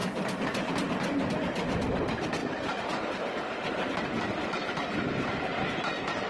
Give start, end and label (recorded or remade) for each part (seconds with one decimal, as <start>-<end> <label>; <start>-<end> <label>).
0.0-2.4 recorded; 2.4-3.1 remade; 3.1-6.3 recorded